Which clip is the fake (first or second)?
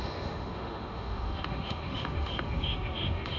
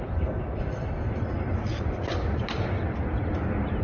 first